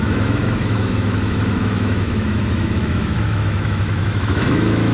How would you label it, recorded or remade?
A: remade